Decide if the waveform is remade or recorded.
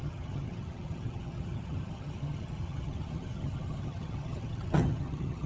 remade